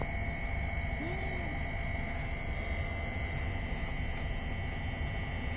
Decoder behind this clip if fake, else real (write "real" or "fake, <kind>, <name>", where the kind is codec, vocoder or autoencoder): real